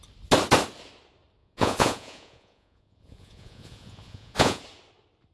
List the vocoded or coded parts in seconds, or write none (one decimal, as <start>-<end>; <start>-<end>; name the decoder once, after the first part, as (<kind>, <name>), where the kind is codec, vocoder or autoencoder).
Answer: 1.4-4.6 (vocoder, Vocos)